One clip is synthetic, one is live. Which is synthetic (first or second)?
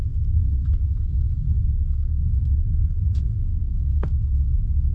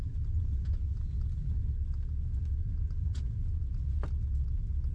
first